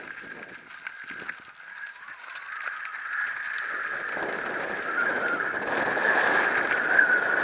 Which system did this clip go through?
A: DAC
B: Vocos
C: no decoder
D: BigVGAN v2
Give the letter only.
C